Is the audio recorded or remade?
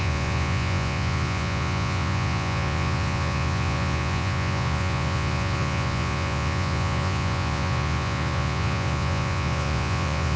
remade